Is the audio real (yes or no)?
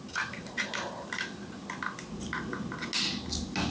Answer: yes